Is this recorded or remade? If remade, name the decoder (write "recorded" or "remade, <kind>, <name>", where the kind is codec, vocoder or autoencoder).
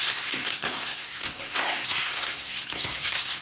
remade, codec, SNAC